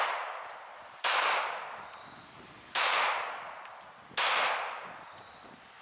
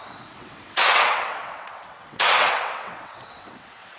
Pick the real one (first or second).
first